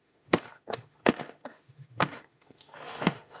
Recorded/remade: remade